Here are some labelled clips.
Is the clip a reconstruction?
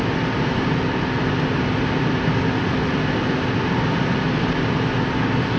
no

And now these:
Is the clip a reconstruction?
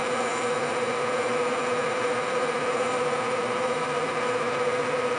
yes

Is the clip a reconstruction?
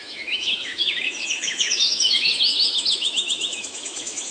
yes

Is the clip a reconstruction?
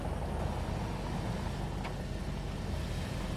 no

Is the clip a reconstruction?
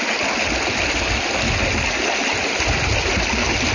no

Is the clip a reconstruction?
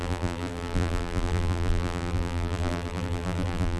yes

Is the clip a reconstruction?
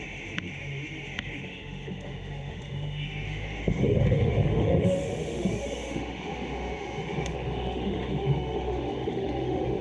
yes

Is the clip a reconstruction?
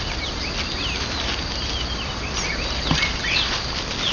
no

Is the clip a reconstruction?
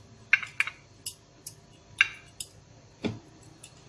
no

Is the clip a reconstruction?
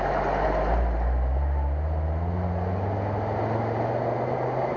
no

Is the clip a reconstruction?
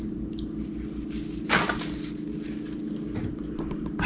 no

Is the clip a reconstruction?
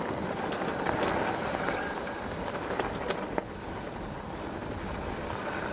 no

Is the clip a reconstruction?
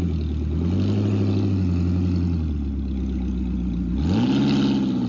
no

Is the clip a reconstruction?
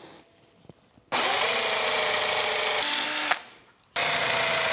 no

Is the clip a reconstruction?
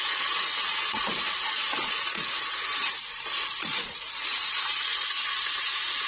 yes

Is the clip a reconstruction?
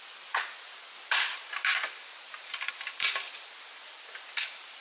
no